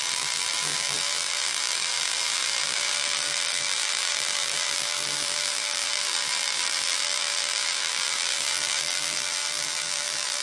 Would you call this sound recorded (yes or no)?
no